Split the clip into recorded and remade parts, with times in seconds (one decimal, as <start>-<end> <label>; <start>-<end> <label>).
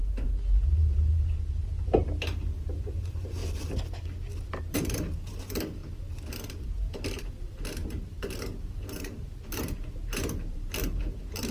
0.0-0.7 recorded; 0.7-3.4 remade; 3.4-4.7 recorded; 4.7-5.8 remade; 5.8-6.6 recorded; 6.6-11.5 remade